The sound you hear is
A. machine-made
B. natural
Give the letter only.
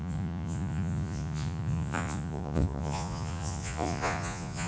A